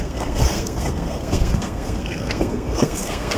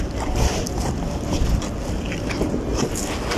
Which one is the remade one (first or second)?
first